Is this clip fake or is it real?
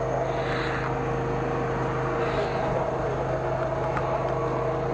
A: real